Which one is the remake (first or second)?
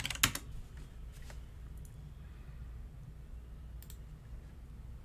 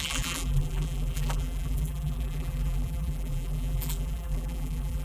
second